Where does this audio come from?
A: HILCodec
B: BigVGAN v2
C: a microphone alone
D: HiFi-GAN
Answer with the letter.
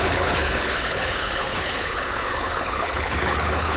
A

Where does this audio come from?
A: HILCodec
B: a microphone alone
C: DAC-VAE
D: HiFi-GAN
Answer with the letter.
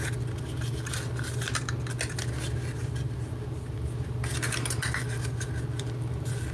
B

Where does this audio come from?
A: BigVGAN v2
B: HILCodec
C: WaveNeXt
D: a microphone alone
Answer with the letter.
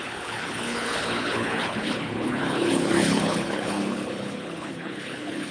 B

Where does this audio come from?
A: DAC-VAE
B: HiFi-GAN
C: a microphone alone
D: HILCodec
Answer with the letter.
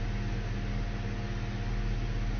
C